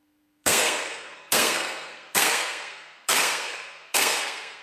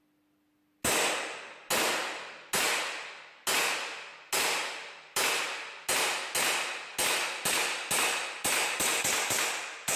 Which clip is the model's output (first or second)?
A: first